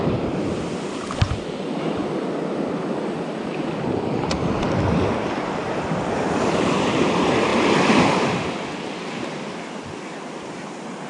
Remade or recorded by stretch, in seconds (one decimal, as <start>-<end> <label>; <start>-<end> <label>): 0.0-2.0 remade; 2.0-6.9 recorded; 6.9-7.5 remade; 7.5-8.3 recorded; 8.3-11.1 remade